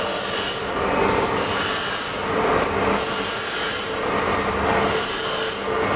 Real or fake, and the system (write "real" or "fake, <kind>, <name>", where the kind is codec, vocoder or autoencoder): real